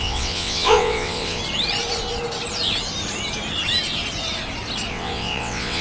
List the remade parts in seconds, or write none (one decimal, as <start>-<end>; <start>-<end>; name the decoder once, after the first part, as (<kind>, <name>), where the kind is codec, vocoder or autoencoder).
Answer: 0.0-1.4 (vocoder, WaveNeXt); 4.9-5.8